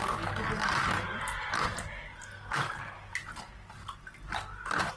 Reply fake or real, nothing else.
real